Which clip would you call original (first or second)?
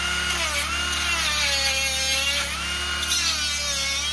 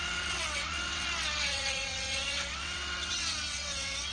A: first